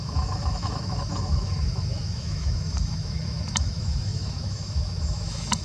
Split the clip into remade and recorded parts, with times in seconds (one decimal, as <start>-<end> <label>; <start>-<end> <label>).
0.0-5.6 remade